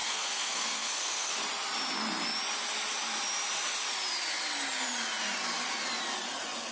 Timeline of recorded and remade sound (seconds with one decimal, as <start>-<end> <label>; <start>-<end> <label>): 0.0-1.4 remade; 1.4-6.7 recorded